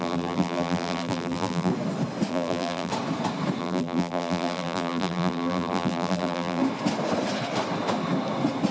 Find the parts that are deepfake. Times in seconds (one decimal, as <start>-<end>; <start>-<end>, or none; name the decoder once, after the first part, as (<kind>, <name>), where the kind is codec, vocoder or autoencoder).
0.0-1.7 (vocoder, BigVGAN v2); 2.3-2.9; 3.6-6.6